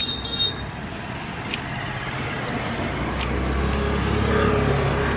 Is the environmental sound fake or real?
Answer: real